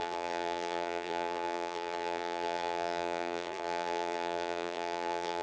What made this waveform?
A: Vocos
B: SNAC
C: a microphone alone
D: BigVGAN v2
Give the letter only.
D